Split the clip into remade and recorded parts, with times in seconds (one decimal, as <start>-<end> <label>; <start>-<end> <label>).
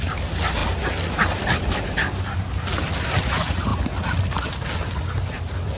0.0-5.8 recorded